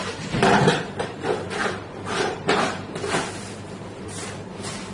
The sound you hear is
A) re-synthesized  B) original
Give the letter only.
A